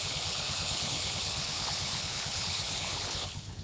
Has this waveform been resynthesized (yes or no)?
yes